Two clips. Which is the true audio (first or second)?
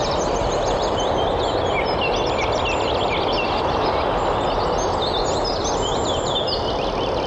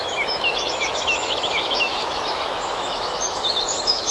first